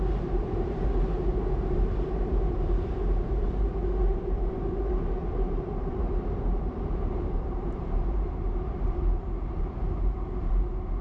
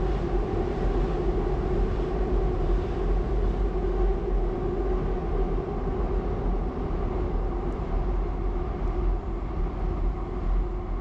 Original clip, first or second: second